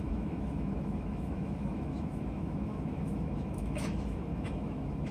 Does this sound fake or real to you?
fake